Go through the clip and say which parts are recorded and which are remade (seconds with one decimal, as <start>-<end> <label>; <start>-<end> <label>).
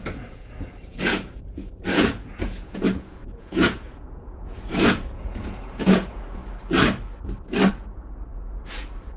0.0-6.4 remade; 6.4-7.7 recorded; 7.7-9.2 remade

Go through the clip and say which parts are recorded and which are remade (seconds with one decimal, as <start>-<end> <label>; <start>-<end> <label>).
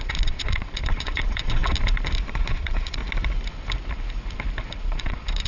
0.0-1.6 remade; 1.6-2.4 recorded; 2.4-3.0 remade; 3.0-4.7 recorded; 4.7-5.5 remade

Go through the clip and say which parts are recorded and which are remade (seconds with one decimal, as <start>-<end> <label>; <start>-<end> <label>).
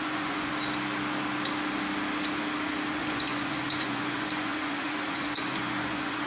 0.0-0.5 remade; 0.5-2.9 recorded; 2.9-6.3 remade